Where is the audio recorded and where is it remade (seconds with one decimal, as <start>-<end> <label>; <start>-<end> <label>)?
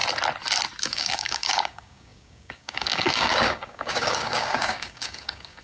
0.0-0.8 recorded; 0.8-5.6 remade